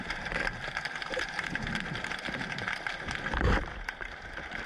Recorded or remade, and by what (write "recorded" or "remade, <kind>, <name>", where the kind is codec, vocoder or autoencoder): remade, vocoder, BigVGAN v2